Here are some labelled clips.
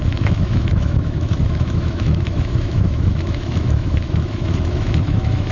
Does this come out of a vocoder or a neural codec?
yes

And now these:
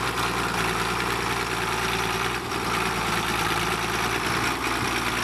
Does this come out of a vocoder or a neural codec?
no